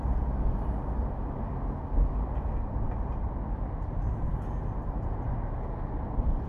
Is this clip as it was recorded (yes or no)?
yes